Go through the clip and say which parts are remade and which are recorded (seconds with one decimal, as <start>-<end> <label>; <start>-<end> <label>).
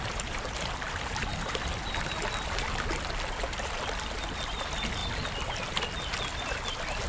0.0-7.1 recorded